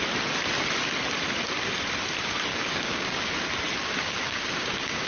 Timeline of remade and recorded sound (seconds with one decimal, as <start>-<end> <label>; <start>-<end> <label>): 0.0-2.5 recorded; 2.5-3.3 remade; 3.3-3.8 recorded; 3.8-5.1 remade

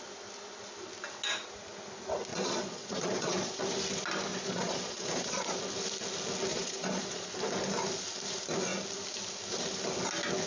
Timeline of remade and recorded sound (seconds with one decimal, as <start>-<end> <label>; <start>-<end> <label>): 0.0-2.3 recorded; 2.3-3.6 remade; 3.6-4.3 recorded; 4.3-5.6 remade; 5.6-6.5 recorded; 6.5-7.3 remade; 7.3-10.5 recorded

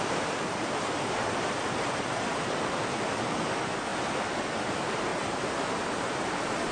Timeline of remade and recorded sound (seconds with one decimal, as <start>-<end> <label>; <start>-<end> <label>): 0.0-6.7 remade